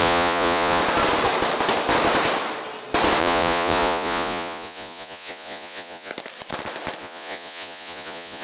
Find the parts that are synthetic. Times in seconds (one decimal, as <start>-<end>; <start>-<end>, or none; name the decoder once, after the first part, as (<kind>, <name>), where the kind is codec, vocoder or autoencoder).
0.0-0.8 (vocoder, Vocos); 3.2-6.1; 7.0-8.4